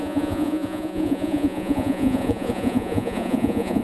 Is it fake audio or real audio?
fake